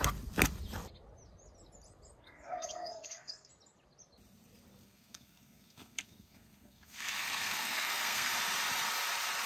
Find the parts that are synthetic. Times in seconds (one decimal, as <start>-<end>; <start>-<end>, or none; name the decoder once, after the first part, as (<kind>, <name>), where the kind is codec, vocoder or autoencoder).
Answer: 2.2-3.5 (codec, SNAC); 4.8-8.3